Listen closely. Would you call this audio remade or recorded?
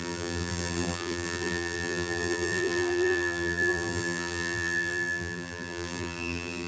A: remade